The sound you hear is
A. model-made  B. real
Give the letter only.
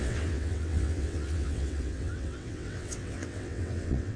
A